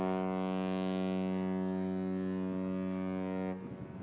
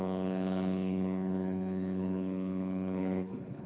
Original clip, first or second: first